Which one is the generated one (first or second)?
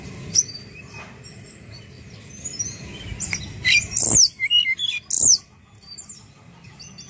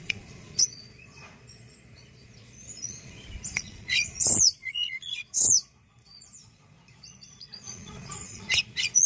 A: second